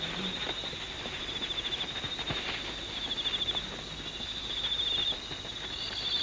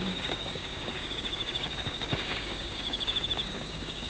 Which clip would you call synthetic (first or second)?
second